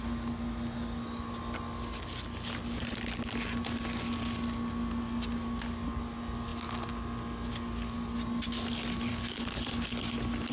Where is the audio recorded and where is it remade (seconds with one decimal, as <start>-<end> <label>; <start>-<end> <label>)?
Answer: 0.0-9.1 recorded; 9.1-9.6 remade; 9.6-10.5 recorded